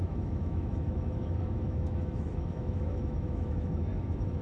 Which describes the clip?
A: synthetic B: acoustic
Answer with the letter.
A